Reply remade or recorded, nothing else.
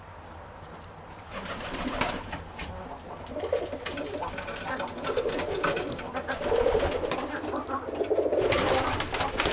recorded